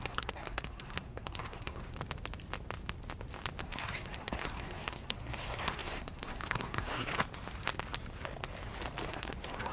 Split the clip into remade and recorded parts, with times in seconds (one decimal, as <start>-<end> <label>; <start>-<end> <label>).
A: 0.0-1.8 remade; 1.8-3.6 recorded; 3.6-7.1 remade; 7.1-9.1 recorded; 9.1-9.7 remade